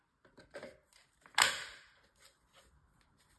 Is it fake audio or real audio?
real